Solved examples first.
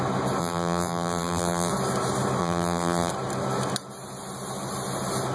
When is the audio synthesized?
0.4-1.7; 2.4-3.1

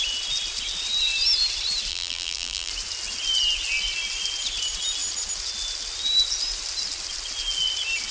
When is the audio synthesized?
1.9-2.7

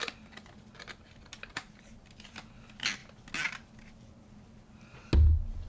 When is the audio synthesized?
1.5-2.1

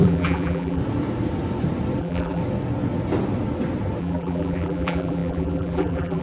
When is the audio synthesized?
0.0-0.8; 2.0-2.4; 4.0-6.2

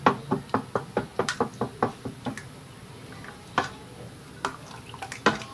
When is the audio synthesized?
none

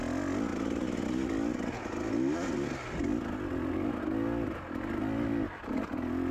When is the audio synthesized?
none

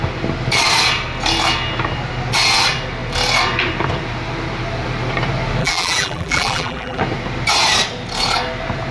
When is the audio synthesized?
5.6-7.0

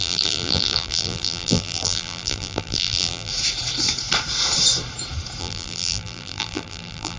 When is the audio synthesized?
0.0-3.3; 5.4-7.2